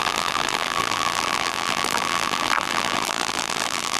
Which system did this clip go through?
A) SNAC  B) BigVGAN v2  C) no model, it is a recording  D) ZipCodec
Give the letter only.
B